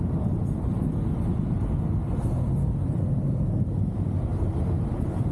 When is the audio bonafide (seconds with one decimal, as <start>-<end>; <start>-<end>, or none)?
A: 0.0-4.3